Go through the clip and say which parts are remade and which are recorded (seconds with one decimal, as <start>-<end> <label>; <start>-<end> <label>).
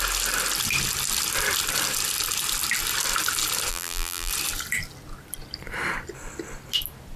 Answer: 0.0-3.7 recorded; 3.7-4.3 remade; 4.3-7.2 recorded